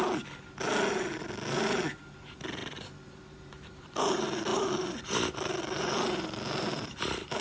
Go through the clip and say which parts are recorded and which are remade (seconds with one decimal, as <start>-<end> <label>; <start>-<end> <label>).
0.0-2.6 recorded; 2.6-3.9 remade; 3.9-4.5 recorded; 4.5-7.4 remade